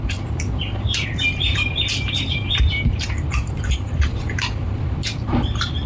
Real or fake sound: fake